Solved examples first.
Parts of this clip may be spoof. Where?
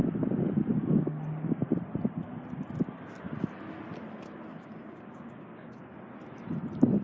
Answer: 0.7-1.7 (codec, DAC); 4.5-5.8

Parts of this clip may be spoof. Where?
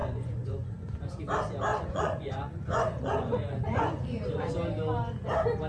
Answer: 0.0-1.1 (vocoder, Vocos); 1.7-4.5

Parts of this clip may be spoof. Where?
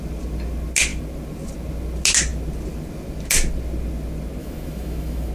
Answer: 4.4-5.3 (autoencoder, DAC-VAE)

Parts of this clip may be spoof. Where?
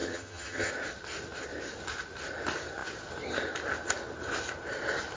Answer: 0.0-0.7 (vocoder, HiFi-GAN)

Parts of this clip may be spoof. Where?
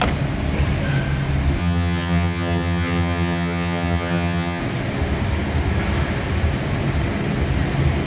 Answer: 1.6-4.6 (vocoder, HiFi-GAN)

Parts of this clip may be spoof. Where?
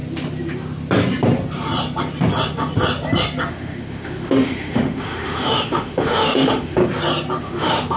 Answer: 3.5-6.8 (autoencoder, DAC-VAE); 7.4-8.0